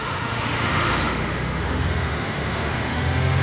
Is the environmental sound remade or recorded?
remade